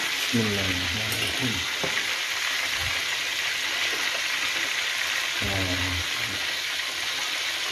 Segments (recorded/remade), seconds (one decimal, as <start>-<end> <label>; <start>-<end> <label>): 0.0-7.7 recorded